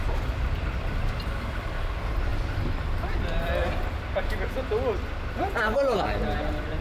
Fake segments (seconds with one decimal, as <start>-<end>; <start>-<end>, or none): none